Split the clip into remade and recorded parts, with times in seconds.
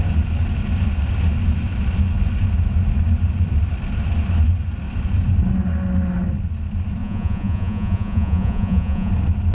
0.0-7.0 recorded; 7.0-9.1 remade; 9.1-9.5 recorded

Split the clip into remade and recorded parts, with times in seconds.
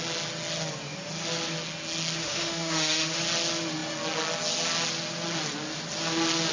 0.0-2.2 recorded; 2.2-3.2 remade; 3.2-6.5 recorded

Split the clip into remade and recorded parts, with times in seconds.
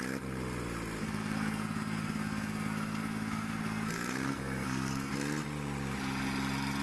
0.0-1.0 recorded; 1.0-5.1 remade; 5.1-6.8 recorded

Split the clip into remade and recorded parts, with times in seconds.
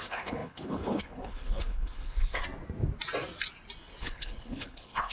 0.0-2.4 remade; 2.4-4.0 recorded; 4.0-5.1 remade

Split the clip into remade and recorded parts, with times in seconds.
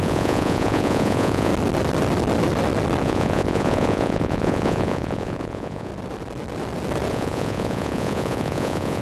0.0-1.5 remade; 1.5-3.0 recorded; 3.0-5.9 remade; 5.9-7.1 recorded; 7.1-9.0 remade